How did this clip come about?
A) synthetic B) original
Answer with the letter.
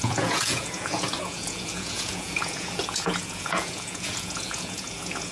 A